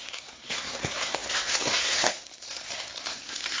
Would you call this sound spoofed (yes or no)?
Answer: yes